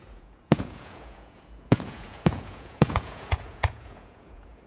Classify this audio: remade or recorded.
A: remade